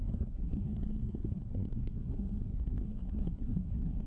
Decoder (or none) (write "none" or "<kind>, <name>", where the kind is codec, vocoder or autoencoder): codec, SNAC